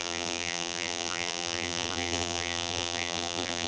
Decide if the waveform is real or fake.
fake